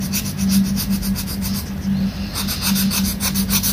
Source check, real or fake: real